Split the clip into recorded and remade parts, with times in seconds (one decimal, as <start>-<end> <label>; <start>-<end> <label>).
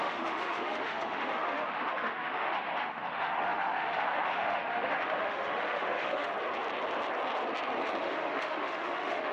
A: 0.0-6.3 remade; 6.3-8.0 recorded; 8.0-9.3 remade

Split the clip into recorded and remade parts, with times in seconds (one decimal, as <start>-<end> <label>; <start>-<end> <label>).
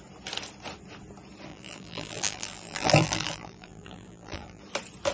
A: 0.0-1.5 recorded; 1.5-4.6 remade; 4.6-5.1 recorded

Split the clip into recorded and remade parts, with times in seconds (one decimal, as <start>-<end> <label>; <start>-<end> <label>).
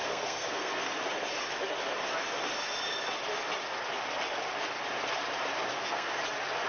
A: 0.0-1.0 remade; 1.0-5.7 recorded; 5.7-6.2 remade; 6.2-6.7 recorded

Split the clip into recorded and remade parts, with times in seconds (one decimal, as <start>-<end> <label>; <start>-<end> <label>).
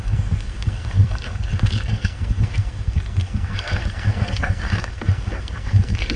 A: 0.0-6.2 remade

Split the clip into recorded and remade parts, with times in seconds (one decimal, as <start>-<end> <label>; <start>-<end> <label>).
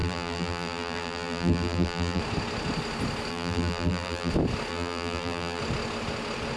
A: 0.0-2.2 remade; 2.2-3.3 recorded; 3.3-4.3 remade; 4.3-4.7 recorded; 4.7-5.6 remade; 5.6-6.6 recorded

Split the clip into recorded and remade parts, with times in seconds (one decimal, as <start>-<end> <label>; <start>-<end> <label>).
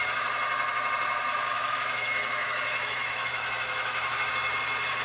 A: 0.0-1.3 recorded; 1.3-4.3 remade; 4.3-5.0 recorded